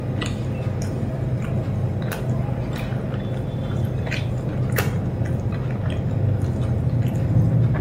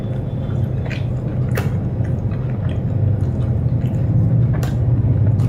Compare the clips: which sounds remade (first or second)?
second